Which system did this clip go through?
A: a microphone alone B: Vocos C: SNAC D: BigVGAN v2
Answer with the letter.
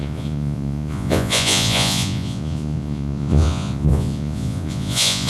B